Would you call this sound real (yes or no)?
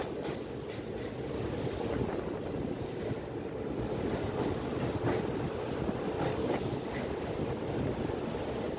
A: yes